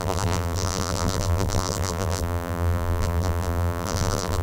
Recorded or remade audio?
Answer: remade